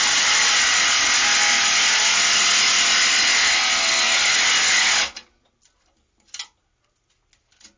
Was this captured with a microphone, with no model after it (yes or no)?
yes